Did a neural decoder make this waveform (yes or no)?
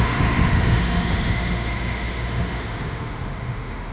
yes